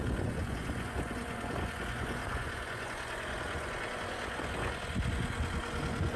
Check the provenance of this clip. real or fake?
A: fake